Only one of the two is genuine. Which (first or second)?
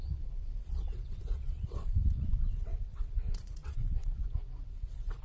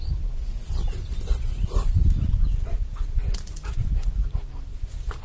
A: second